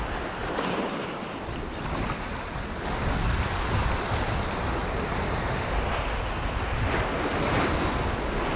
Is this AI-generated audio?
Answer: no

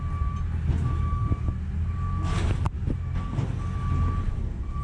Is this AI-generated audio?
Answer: no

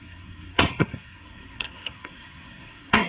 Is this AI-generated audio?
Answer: yes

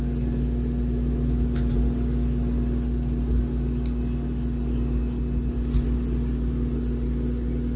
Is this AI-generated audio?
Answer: no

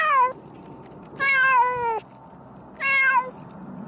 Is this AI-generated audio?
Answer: no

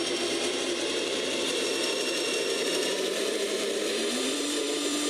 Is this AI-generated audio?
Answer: yes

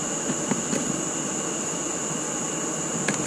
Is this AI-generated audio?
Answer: no